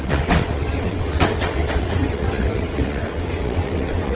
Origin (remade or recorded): remade